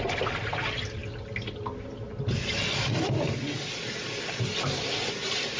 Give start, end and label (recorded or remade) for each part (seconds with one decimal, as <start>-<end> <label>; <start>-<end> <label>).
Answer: 0.0-5.6 recorded